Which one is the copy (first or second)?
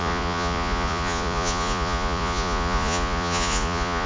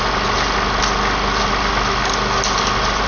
first